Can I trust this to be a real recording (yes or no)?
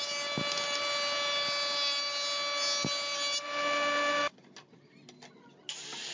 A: yes